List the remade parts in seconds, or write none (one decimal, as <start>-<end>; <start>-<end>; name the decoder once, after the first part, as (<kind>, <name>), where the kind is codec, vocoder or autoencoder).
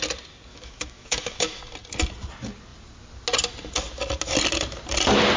0.5-1.6 (autoencoder, DAC-VAE)